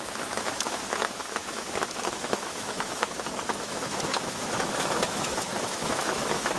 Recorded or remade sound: remade